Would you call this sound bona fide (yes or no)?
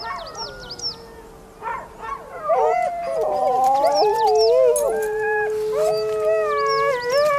yes